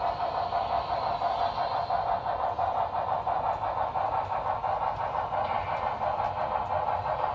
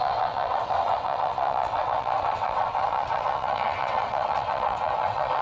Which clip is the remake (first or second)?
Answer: second